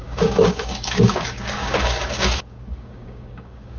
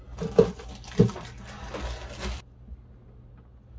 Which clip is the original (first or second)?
second